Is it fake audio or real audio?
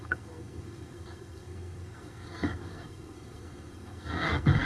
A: fake